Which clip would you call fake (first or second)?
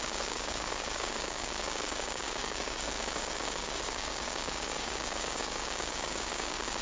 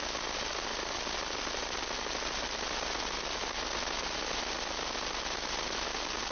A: first